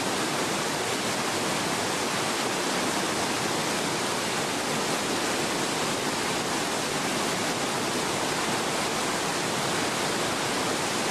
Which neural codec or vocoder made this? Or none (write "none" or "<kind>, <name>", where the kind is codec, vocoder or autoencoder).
none